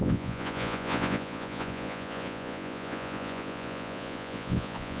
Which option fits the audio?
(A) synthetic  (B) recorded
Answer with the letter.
A